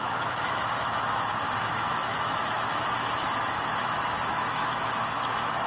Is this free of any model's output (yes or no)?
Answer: no